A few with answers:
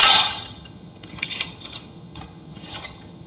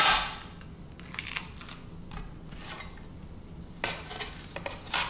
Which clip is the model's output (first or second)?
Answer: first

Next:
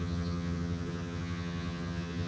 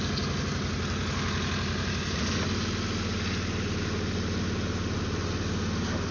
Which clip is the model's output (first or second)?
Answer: first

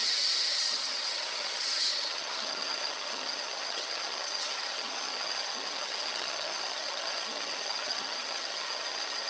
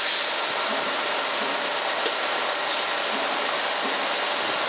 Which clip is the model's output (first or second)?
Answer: first